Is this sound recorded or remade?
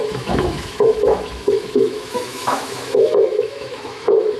remade